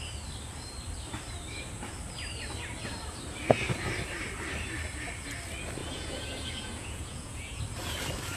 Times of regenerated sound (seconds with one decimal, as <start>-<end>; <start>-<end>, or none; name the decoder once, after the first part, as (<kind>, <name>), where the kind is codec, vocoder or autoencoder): 5.8-7.6 (vocoder, Vocos)